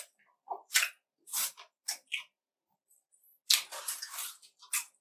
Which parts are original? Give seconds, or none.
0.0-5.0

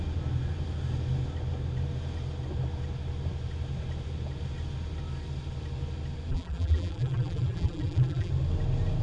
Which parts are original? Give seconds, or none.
0.0-6.3; 8.3-9.0

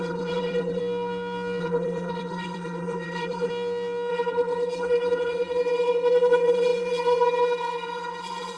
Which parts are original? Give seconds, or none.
0.8-1.6; 3.5-4.1

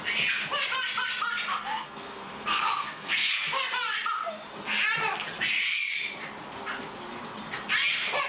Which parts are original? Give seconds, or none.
0.0-1.5; 3.3-8.3

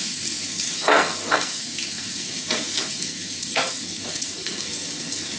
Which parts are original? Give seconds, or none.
none

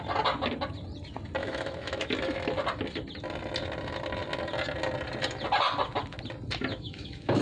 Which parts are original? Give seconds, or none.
0.0-1.4; 2.1-6.7

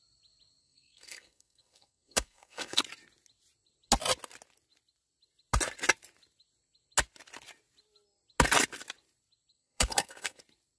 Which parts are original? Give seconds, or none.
0.0-0.6; 2.8-9.5; 10.4-10.8